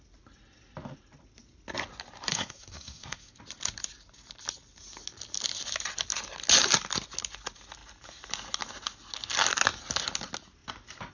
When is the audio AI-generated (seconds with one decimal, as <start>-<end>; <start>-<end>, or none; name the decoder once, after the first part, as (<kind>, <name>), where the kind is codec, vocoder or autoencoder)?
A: 2.3-3.4 (codec, SNAC)